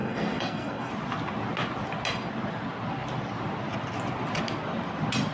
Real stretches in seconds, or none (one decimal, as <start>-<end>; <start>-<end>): 0.9-5.3